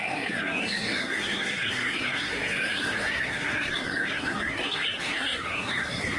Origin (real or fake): fake